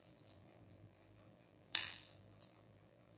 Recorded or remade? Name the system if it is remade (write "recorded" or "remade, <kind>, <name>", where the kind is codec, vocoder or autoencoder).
remade, vocoder, BigVGAN v2